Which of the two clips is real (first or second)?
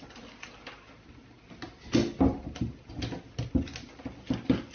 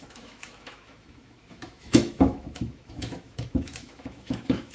first